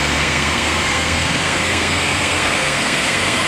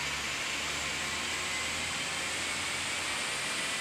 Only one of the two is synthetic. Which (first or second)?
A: first